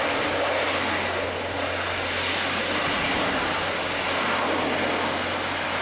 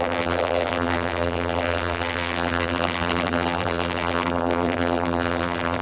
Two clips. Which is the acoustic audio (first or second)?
first